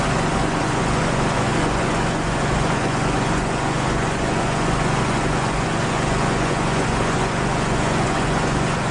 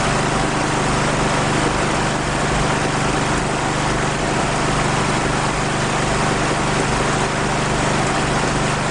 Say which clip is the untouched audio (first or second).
second